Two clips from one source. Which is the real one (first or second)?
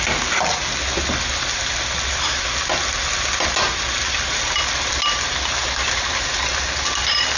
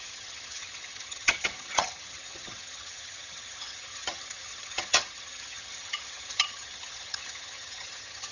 first